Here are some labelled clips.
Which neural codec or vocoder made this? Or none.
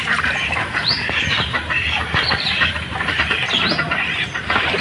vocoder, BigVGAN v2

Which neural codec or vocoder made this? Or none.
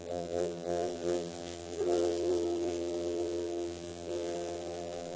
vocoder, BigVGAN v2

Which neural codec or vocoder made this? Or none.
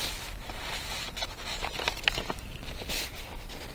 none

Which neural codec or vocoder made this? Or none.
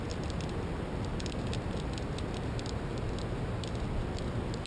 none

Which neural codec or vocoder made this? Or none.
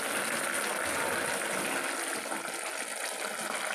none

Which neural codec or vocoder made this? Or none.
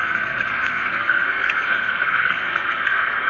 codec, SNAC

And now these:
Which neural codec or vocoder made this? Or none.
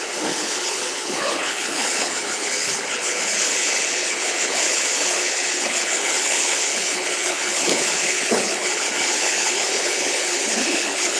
codec, HILCodec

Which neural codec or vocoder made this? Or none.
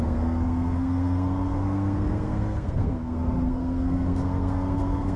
codec, SNAC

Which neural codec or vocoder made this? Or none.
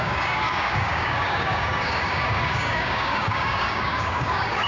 codec, DAC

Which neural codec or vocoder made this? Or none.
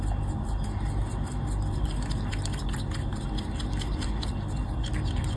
none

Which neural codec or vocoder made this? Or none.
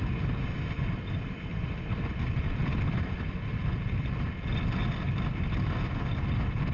none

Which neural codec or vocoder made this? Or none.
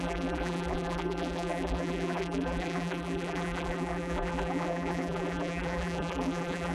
vocoder, BigVGAN v2